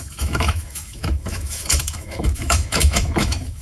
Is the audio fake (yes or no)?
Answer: yes